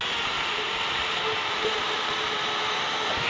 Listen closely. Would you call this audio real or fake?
real